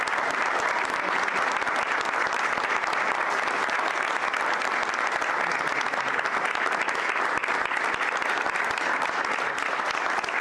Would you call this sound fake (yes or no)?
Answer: no